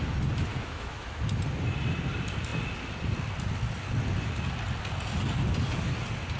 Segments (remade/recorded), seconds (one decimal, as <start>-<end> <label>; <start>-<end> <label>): 0.0-0.5 recorded; 0.5-1.2 remade; 1.2-6.4 recorded